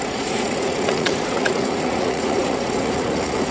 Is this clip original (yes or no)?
no